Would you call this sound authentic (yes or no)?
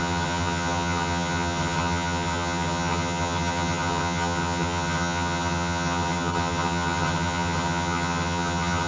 no